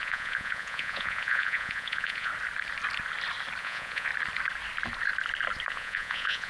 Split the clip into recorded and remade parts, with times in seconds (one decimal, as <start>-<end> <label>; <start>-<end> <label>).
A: 0.0-2.3 remade; 2.3-3.6 recorded; 3.6-4.1 remade; 4.1-5.7 recorded; 5.7-6.5 remade

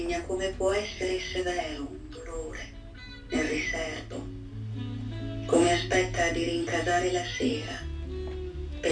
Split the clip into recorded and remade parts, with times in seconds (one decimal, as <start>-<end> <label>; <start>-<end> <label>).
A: 0.0-0.7 recorded; 0.7-1.6 remade; 1.6-8.9 recorded

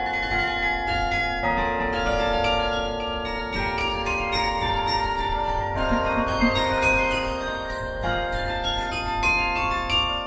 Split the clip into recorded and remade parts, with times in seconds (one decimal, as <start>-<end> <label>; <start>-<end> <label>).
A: 0.0-3.8 recorded; 3.8-8.9 remade; 8.9-10.3 recorded

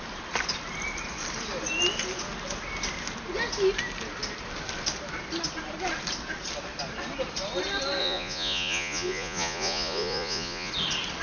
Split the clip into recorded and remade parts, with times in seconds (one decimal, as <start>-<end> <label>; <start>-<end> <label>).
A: 0.0-8.0 recorded; 8.0-10.7 remade; 10.7-11.2 recorded